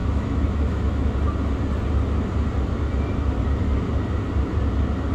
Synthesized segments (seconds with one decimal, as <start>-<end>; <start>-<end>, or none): 0.0-1.1